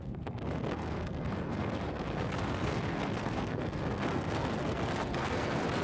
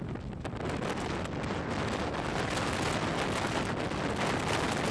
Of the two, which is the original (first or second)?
second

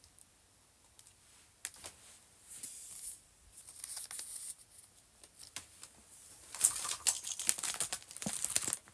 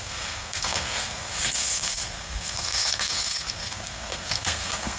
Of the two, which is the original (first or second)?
first